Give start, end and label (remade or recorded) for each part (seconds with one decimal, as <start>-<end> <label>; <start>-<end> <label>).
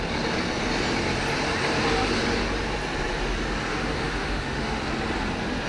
0.0-3.7 recorded; 3.7-4.8 remade; 4.8-5.7 recorded